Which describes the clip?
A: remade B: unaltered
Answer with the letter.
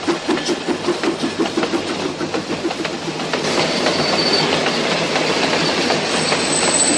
B